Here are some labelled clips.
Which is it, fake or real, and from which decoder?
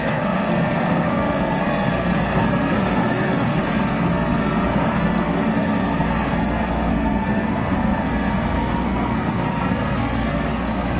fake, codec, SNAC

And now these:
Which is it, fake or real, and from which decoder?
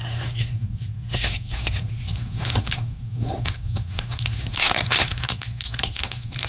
fake, codec, SNAC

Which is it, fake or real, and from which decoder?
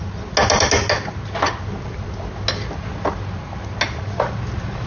real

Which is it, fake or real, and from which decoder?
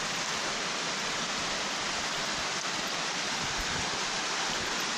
fake, vocoder, BigVGAN v2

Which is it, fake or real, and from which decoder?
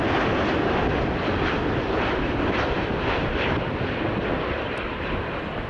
real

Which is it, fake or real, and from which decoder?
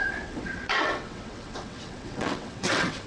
fake, vocoder, WaveNeXt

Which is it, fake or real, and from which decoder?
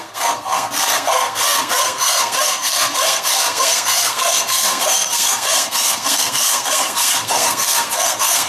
fake, codec, SNAC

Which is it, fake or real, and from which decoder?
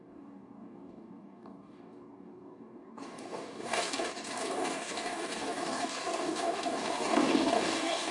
fake, codec, DAC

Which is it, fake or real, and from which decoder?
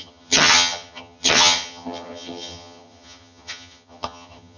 fake, vocoder, HiFi-GAN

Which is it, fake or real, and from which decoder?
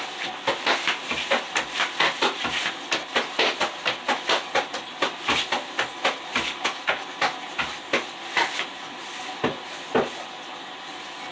real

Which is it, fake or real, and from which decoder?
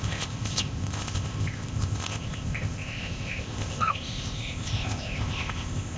fake, codec, ZipCodec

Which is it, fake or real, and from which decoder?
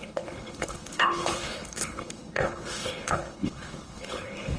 fake, codec, HILCodec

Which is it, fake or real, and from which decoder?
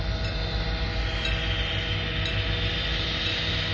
real